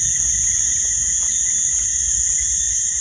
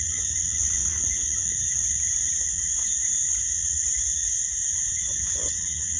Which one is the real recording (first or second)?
first